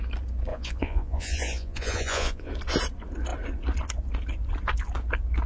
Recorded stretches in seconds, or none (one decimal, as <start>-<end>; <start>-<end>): 0.0-0.5; 2.5-5.5